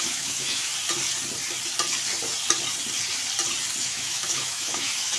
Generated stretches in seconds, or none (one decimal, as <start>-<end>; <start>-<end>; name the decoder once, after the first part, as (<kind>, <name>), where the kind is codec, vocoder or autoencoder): 0.0-0.7 (autoencoder, DAC-VAE); 3.8-5.2